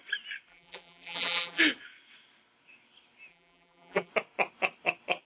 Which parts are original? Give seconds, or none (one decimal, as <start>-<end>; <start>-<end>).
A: 0.0-0.5; 1.6-3.3; 4.1-5.2